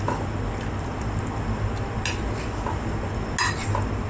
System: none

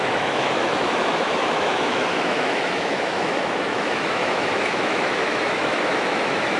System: autoencoder, DAC-VAE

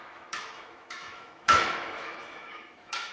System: autoencoder, DAC-VAE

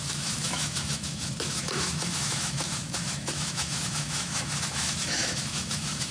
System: autoencoder, DAC-VAE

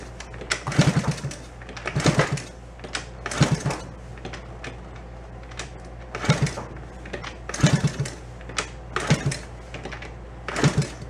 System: none